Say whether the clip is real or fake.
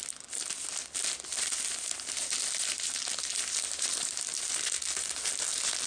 real